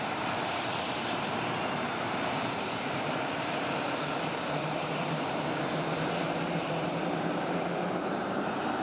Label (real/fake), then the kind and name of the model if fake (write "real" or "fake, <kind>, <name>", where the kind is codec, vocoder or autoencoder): fake, vocoder, BigVGAN v2